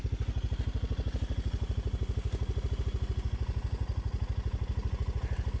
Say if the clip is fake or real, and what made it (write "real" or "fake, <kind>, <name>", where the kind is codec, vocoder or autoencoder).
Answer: real